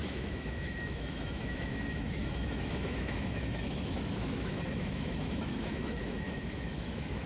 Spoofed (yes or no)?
yes